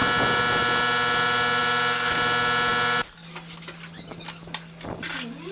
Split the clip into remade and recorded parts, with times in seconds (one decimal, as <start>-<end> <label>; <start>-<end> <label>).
0.0-5.5 recorded